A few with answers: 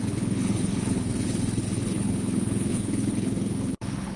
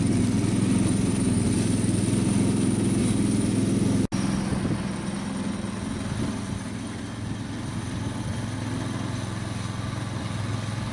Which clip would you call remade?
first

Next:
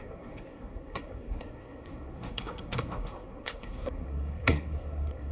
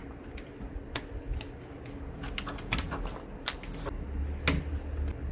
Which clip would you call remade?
first